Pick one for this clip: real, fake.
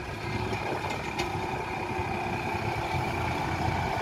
real